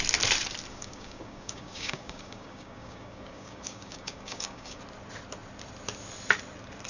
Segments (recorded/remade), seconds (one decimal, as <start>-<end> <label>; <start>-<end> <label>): 0.0-0.7 recorded; 0.7-4.8 remade; 4.8-6.9 recorded